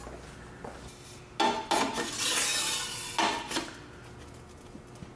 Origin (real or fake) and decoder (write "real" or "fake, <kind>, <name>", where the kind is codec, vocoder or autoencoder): real